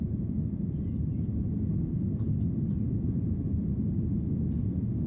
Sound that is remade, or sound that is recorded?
recorded